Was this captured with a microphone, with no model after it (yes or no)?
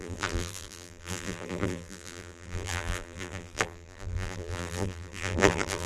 no